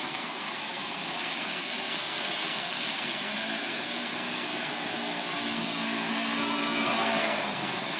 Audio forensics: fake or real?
fake